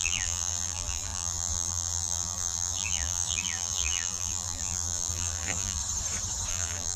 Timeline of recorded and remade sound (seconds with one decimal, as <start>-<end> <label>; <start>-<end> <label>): 0.0-5.8 remade; 5.8-6.5 recorded; 6.5-7.0 remade